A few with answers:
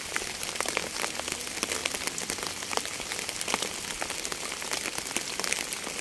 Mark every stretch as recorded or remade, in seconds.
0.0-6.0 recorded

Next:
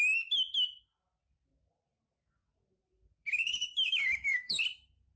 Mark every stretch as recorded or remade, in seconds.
0.0-1.5 recorded; 1.5-4.6 remade; 4.6-5.2 recorded

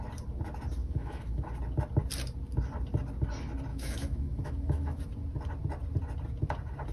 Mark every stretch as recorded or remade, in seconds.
0.0-0.8 recorded; 0.8-1.5 remade; 1.5-3.7 recorded; 3.7-5.0 remade; 5.0-6.9 recorded

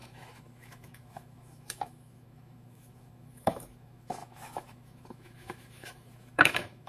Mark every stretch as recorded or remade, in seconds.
0.0-6.9 remade

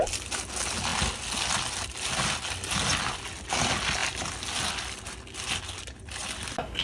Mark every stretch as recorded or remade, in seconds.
0.0-6.8 recorded

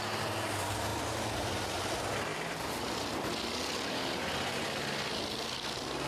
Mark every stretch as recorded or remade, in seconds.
0.0-6.1 recorded

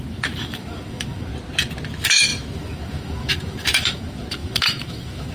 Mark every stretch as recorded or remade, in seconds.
0.0-1.3 remade; 1.3-1.9 recorded; 1.9-5.3 remade